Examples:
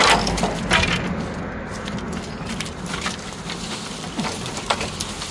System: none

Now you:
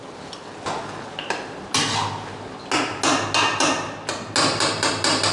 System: none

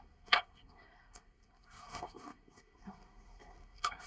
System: codec, SNAC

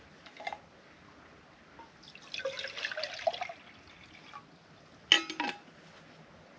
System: none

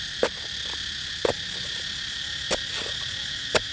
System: none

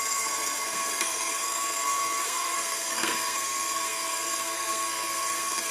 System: codec, SNAC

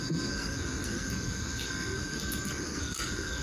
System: codec, SNAC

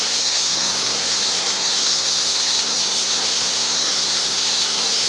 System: codec, SNAC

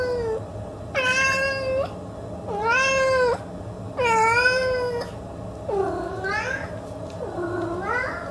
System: none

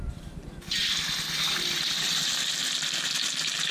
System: none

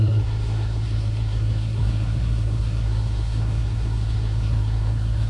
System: codec, SNAC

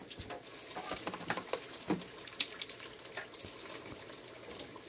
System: none